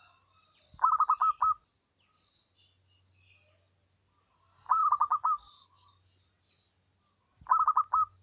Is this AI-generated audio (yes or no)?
no